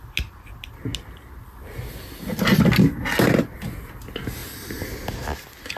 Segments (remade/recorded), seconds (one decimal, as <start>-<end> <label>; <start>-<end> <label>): 0.0-5.8 recorded